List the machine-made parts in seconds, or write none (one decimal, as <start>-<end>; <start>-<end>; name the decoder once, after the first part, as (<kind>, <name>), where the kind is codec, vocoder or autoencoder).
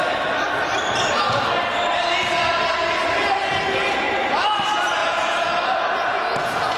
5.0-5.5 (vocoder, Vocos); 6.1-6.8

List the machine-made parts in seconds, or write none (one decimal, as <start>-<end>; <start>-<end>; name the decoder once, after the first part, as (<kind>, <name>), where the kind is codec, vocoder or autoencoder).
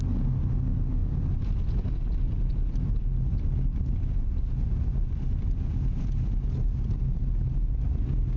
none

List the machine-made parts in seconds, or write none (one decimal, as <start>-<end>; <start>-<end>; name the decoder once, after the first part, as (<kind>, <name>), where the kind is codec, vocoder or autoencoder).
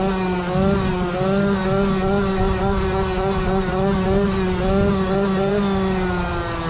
none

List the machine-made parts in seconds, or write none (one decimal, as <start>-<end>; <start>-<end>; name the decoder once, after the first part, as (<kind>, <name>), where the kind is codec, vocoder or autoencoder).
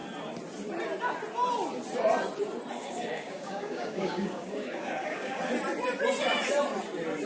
2.8-5.4 (codec, DAC)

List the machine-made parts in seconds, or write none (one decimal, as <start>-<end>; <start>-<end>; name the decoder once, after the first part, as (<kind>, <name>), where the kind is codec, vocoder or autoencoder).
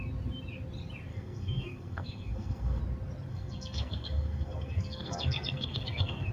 1.1-2.8 (codec, SNAC); 3.3-6.3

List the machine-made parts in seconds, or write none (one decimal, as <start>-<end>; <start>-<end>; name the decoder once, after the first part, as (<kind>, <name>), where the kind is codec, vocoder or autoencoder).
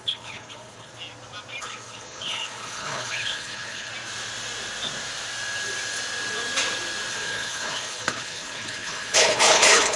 0.0-0.9 (codec, HILCodec); 1.6-3.9; 7.1-10.0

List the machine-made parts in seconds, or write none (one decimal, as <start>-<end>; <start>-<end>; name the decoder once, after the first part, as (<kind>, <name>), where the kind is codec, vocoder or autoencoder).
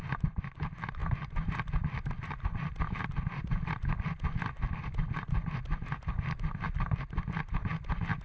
none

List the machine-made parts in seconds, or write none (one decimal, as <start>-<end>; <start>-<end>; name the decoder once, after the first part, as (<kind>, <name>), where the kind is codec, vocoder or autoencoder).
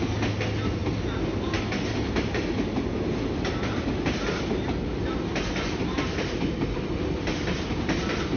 none